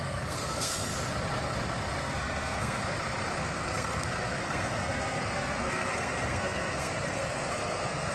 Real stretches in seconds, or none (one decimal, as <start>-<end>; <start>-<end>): 0.9-2.0; 2.8-3.4